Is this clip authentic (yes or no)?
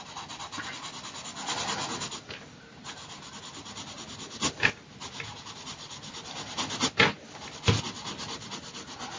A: yes